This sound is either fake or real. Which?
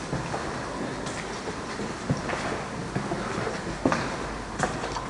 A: real